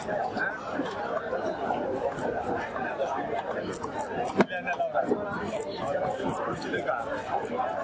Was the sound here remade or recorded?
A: recorded